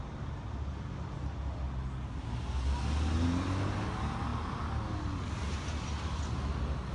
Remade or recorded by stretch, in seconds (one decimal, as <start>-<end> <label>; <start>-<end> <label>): 0.0-6.9 recorded